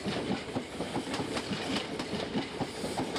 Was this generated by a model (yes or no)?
no